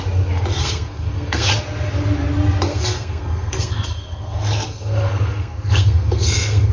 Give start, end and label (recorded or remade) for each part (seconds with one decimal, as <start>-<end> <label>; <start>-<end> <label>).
0.0-0.6 recorded; 0.6-1.5 remade; 1.5-2.7 recorded; 2.7-6.7 remade